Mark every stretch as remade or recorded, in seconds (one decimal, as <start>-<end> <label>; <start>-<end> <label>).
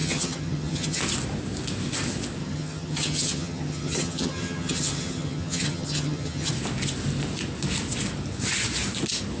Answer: 0.0-1.0 remade; 1.0-2.4 recorded; 2.4-6.5 remade; 6.5-9.4 recorded